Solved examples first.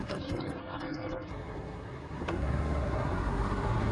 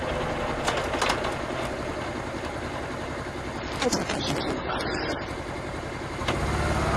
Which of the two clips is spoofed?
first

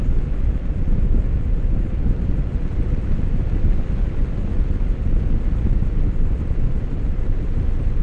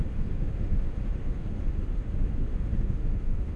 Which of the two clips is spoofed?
second